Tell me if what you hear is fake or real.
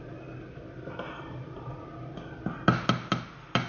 real